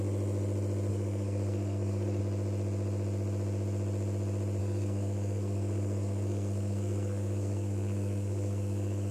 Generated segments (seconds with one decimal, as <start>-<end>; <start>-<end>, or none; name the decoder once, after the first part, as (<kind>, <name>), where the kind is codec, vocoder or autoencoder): 0.9-2.2 (codec, SNAC); 4.6-9.1